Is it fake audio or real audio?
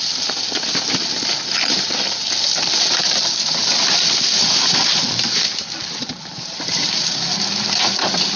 real